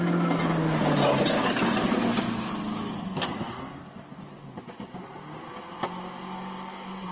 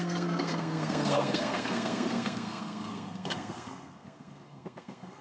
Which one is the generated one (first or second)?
second